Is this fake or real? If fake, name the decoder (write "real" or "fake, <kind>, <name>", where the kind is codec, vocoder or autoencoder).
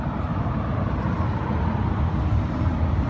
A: real